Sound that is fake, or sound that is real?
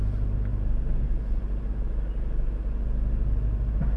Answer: real